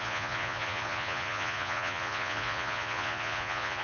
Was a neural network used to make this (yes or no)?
yes